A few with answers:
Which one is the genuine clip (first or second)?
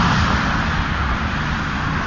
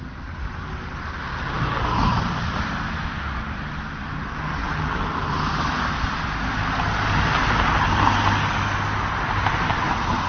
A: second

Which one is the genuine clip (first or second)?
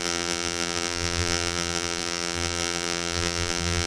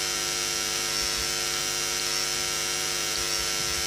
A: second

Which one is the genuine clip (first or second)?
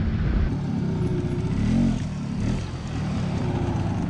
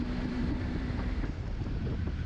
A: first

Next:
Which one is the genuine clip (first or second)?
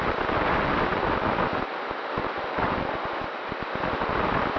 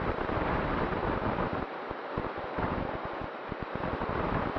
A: first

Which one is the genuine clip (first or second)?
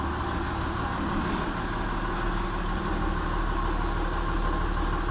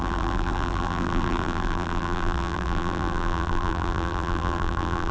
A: first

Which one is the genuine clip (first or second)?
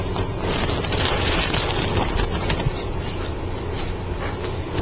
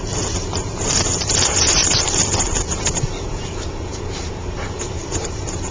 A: first